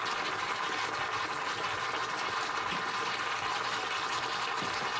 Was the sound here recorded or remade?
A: recorded